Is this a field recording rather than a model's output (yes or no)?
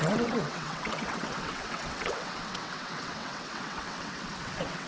no